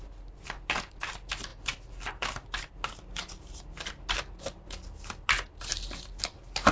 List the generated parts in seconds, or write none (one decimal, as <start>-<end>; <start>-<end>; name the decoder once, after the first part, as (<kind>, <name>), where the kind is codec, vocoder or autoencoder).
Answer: none